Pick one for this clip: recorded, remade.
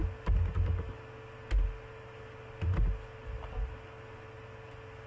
recorded